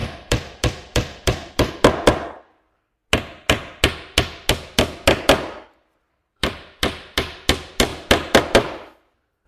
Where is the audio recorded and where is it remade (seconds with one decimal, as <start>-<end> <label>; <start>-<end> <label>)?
0.0-1.7 remade; 1.7-6.2 recorded; 6.2-7.2 remade; 7.2-9.5 recorded